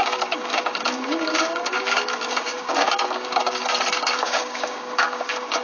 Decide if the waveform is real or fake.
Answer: fake